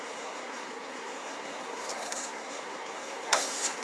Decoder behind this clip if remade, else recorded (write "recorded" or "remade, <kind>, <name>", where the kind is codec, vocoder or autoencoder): remade, codec, SNAC